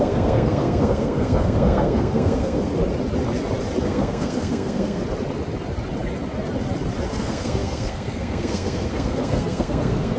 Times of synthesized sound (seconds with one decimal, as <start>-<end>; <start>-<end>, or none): 0.0-2.7; 3.8-5.0; 7.1-10.2